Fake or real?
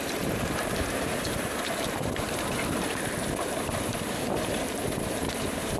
fake